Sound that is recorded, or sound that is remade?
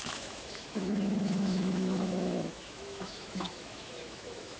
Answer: remade